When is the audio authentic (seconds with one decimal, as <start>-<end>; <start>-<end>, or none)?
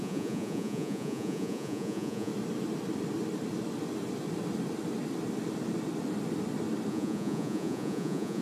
2.3-6.9